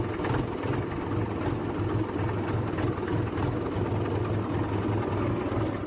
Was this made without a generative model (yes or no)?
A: yes